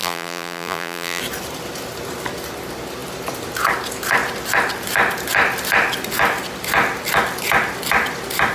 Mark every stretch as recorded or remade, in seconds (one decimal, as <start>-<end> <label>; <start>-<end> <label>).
0.0-1.2 remade; 1.2-8.5 recorded